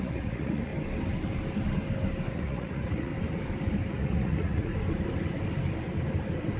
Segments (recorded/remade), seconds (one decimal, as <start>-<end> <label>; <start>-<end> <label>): 0.0-0.7 remade; 0.7-2.3 recorded; 2.3-3.1 remade; 3.1-3.9 recorded; 3.9-4.7 remade; 4.7-6.6 recorded